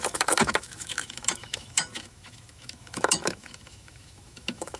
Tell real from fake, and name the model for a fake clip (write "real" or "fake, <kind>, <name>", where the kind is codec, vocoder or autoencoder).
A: fake, autoencoder, DAC-VAE